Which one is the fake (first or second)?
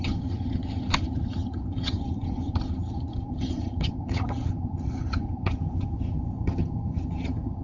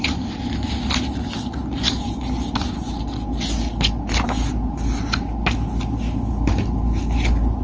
first